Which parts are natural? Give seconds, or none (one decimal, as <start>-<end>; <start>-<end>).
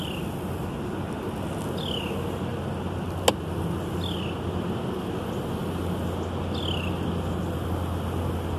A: 0.0-8.6